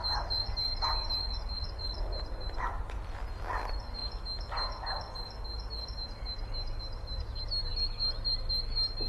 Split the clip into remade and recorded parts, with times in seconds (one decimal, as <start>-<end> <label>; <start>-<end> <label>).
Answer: 0.0-9.1 recorded